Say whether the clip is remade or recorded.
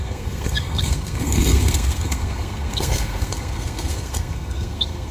remade